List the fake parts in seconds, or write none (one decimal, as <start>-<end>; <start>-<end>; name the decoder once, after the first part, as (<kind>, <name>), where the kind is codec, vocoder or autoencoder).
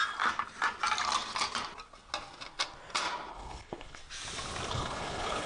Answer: 3.3-4.0 (codec, HILCodec); 4.7-5.5